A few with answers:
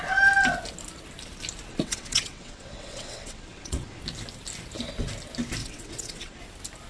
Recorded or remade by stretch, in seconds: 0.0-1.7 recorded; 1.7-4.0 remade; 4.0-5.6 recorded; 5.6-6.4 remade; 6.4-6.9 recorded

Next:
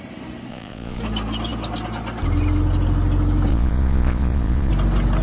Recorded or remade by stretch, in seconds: 0.0-0.5 recorded; 0.5-1.0 remade; 1.0-3.5 recorded; 3.5-4.7 remade; 4.7-5.2 recorded

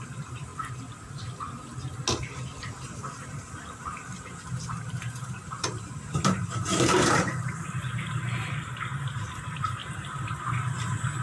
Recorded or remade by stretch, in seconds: 0.0-0.5 remade; 0.5-2.6 recorded; 2.6-11.2 remade

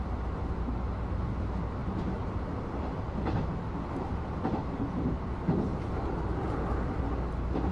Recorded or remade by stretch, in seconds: 0.0-7.7 recorded

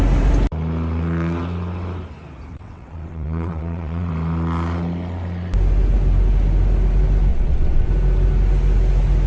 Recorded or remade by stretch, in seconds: 0.0-2.5 recorded; 2.5-4.1 remade; 4.1-7.3 recorded; 7.3-7.9 remade; 7.9-9.3 recorded

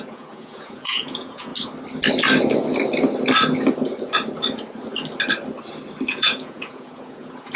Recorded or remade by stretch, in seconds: 0.0-1.5 remade; 1.5-6.1 recorded; 6.1-7.6 remade